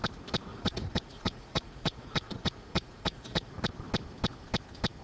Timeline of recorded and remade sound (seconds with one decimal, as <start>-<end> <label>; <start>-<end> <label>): 0.0-0.5 recorded; 0.5-3.5 remade; 3.5-5.0 recorded